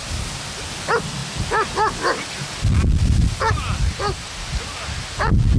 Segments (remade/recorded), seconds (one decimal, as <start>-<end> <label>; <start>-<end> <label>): 0.0-5.6 recorded